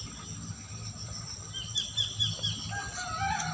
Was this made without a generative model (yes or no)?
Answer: yes